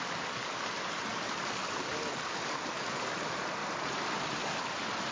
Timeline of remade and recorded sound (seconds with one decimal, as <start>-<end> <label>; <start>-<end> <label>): 0.0-1.6 recorded; 1.6-3.2 remade; 3.2-3.6 recorded; 3.6-4.2 remade; 4.2-5.1 recorded